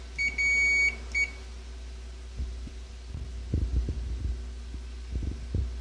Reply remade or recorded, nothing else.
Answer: recorded